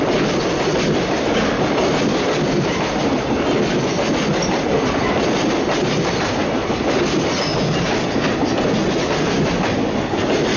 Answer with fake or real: real